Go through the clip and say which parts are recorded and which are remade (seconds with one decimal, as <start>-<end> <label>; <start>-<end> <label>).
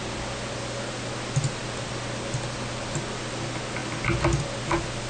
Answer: 0.0-5.1 recorded